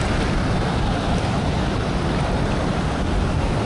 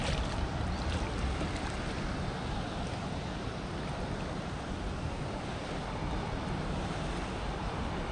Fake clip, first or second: first